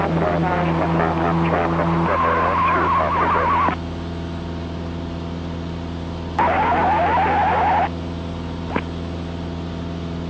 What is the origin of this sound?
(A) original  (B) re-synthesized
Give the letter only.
A